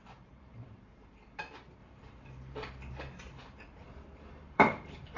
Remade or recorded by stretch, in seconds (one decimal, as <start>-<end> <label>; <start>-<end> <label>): 0.0-1.4 remade; 1.4-1.8 recorded; 1.8-5.2 remade